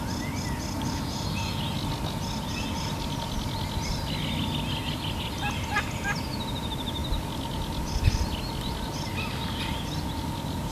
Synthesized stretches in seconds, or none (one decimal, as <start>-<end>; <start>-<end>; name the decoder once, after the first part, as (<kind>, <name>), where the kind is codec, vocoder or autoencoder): none